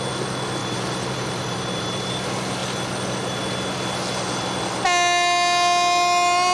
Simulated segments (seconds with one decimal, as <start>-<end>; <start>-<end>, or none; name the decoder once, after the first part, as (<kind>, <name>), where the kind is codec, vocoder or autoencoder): 0.6-2.1 (vocoder, BigVGAN v2)